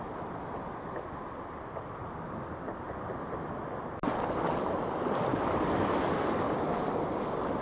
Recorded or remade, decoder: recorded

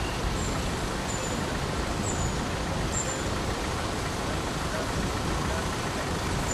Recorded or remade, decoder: recorded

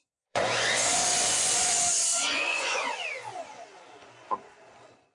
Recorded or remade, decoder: remade, vocoder, Vocos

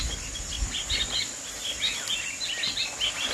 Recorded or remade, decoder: recorded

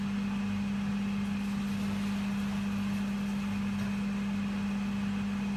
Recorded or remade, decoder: recorded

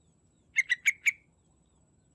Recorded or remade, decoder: recorded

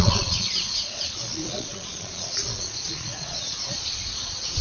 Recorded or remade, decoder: remade, vocoder, Vocos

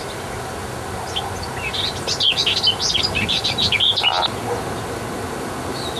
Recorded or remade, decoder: recorded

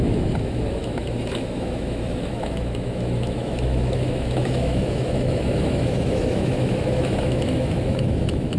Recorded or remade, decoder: remade, autoencoder, DAC-VAE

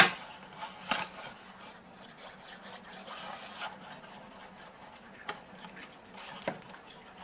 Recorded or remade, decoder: recorded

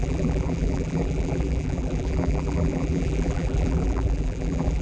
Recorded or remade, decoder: remade, vocoder, BigVGAN v2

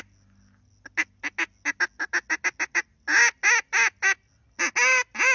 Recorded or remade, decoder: recorded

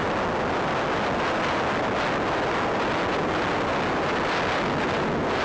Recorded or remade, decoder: recorded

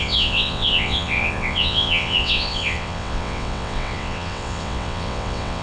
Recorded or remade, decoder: remade, vocoder, WaveNeXt